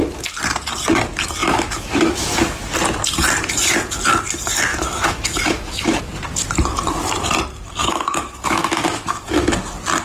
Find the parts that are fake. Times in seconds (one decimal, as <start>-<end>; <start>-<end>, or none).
1.4-2.4; 4.7-6.0; 7.8-9.5